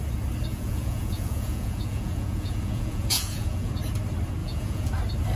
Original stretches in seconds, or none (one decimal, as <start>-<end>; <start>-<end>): 0.0-0.5; 3.7-4.4; 4.9-5.4